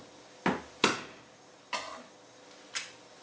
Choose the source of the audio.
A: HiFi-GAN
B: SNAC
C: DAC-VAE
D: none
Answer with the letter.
D